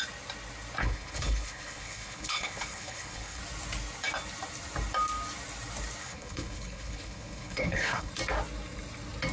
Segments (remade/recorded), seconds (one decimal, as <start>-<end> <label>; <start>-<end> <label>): 0.0-0.8 recorded; 0.8-3.4 remade; 3.4-6.0 recorded; 6.0-8.1 remade; 8.1-9.3 recorded